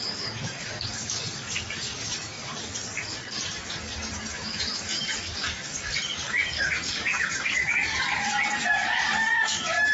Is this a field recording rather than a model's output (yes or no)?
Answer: no